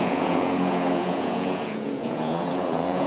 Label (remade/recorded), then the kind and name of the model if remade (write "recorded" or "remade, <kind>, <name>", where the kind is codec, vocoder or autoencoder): remade, vocoder, Vocos